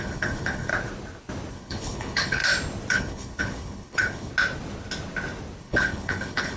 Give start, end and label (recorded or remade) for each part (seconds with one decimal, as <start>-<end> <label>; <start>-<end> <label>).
0.0-0.7 remade; 0.7-1.5 recorded; 1.5-2.4 remade; 2.4-2.9 recorded; 2.9-4.3 remade; 4.3-5.6 recorded; 5.6-6.6 remade